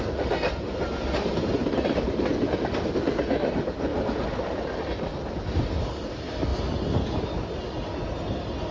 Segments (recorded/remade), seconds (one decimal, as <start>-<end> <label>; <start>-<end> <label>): 0.0-1.6 recorded; 1.6-2.5 remade; 2.5-8.7 recorded

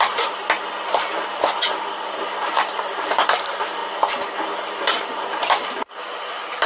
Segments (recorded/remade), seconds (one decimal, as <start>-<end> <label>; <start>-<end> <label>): 0.0-0.4 remade; 0.4-2.5 recorded; 2.5-3.8 remade; 3.8-6.2 recorded; 6.2-6.7 remade

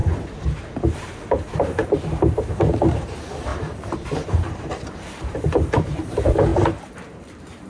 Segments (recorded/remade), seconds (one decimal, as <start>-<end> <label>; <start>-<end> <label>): 0.0-1.0 recorded; 1.0-1.8 remade; 1.8-2.5 recorded; 2.5-7.7 remade

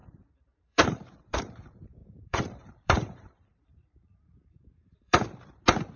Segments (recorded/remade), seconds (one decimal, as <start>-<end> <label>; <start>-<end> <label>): 0.0-1.4 remade; 1.4-2.0 recorded; 2.0-5.6 remade; 5.6-6.0 recorded

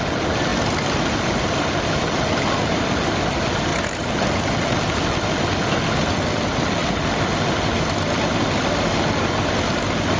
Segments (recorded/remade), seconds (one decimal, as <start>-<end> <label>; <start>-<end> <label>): 0.0-6.8 recorded; 6.8-8.9 remade; 8.9-10.2 recorded